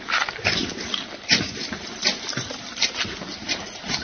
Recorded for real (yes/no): yes